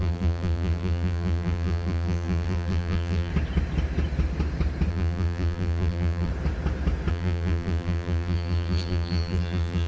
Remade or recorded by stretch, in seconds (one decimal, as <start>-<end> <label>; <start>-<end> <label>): 0.0-3.3 remade; 3.3-4.9 recorded; 4.9-6.3 remade; 6.3-7.1 recorded; 7.1-9.9 remade